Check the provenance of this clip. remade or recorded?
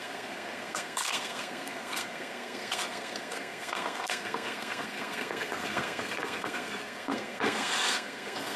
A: remade